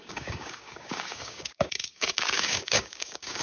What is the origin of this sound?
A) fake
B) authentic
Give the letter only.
A